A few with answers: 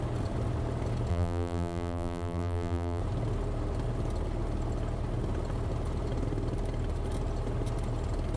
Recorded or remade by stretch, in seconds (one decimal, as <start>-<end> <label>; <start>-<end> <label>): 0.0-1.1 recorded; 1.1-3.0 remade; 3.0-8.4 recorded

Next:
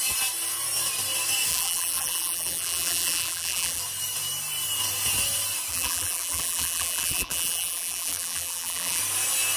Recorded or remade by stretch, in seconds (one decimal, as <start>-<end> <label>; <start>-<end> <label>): 0.0-1.5 recorded; 1.5-3.8 remade; 3.8-5.7 recorded; 5.7-9.0 remade; 9.0-9.6 recorded

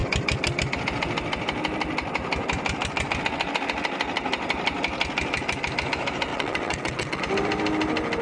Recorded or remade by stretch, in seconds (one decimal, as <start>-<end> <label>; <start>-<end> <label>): 0.0-6.3 recorded; 6.3-7.2 remade; 7.2-8.2 recorded